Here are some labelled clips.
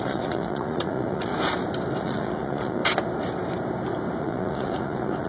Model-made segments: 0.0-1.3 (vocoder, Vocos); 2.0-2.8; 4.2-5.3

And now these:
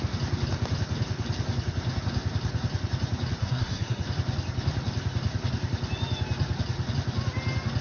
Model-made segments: 3.4-4.0 (codec, SNAC)

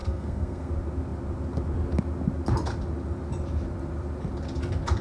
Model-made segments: 0.0-0.7 (codec, SNAC)

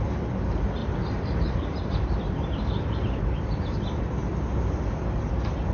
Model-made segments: 0.8-3.2 (vocoder, BigVGAN v2); 4.2-5.3